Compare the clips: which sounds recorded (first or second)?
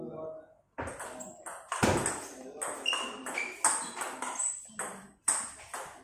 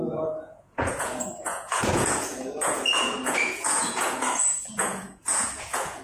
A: first